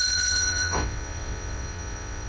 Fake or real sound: fake